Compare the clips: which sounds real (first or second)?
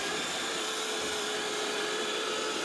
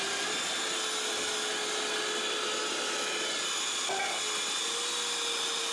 second